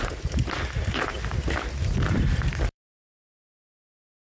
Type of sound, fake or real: fake